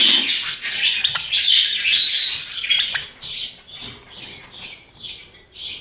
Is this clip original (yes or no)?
no